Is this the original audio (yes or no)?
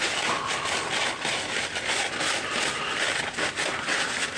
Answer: yes